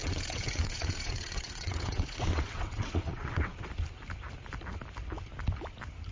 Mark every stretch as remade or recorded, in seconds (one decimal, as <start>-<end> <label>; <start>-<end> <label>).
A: 0.0-3.7 remade; 3.7-6.1 recorded